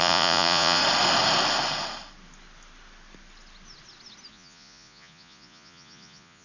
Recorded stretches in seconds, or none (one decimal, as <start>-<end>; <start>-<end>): 0.8-4.3